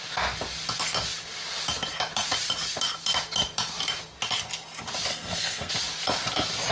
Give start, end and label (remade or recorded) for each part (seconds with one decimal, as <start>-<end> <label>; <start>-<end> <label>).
0.0-5.1 recorded; 5.1-5.7 remade; 5.7-6.7 recorded